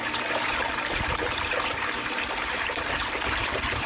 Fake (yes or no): yes